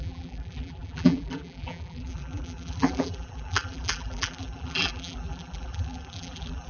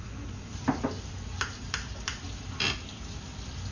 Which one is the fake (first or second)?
first